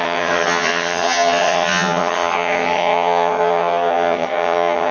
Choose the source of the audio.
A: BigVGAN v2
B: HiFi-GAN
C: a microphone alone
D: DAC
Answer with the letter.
B